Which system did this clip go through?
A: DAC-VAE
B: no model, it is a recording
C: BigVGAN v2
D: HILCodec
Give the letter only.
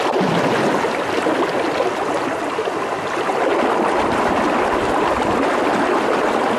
B